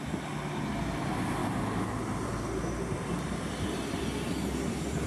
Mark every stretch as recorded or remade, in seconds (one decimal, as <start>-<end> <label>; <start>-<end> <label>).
0.0-5.1 recorded